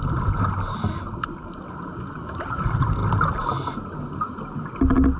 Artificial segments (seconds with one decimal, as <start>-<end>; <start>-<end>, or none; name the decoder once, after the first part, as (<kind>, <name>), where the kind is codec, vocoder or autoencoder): none